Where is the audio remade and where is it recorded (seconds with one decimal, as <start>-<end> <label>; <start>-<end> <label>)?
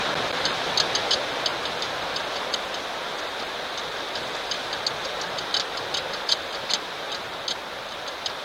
0.0-8.4 recorded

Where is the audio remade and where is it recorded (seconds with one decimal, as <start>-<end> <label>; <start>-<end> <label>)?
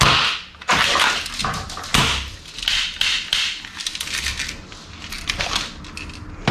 0.0-6.5 recorded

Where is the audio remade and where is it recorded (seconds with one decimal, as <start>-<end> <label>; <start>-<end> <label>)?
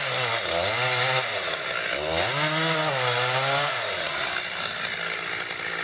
0.0-5.8 recorded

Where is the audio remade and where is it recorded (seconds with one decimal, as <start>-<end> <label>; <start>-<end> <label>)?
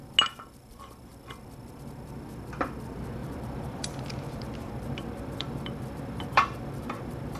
0.0-1.1 recorded; 1.1-1.7 remade; 1.7-3.2 recorded; 3.2-7.4 remade